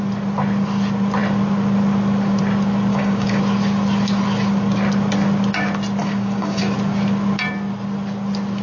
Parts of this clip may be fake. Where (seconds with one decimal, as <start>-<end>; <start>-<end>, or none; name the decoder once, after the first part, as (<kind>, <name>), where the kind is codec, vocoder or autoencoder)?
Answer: 2.9-3.4 (codec, DAC); 6.0-6.6